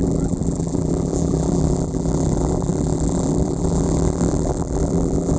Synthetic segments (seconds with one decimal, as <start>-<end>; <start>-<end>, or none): 0.0-5.4